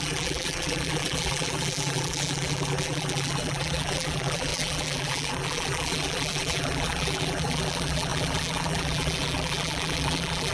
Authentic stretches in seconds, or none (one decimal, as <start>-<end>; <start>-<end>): none